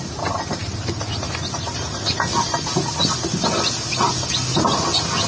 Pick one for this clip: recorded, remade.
recorded